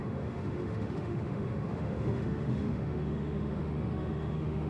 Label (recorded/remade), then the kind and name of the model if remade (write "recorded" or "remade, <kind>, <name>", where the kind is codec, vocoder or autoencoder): remade, autoencoder, DAC-VAE